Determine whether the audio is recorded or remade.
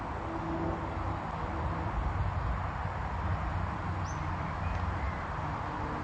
recorded